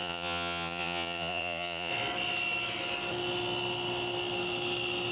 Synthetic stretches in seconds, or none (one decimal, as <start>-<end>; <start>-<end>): 0.0-1.9